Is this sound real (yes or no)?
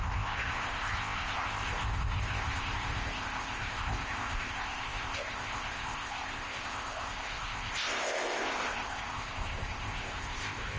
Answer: no